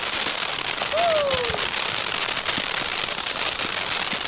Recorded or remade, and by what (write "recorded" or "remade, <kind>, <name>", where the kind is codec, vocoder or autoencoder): recorded